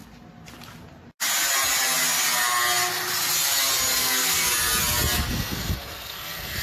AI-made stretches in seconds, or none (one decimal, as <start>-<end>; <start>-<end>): 4.0-4.5; 5.3-6.6